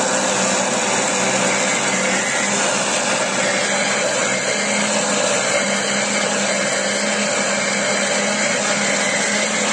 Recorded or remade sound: recorded